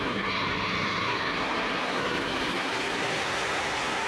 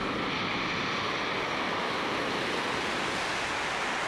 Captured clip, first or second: second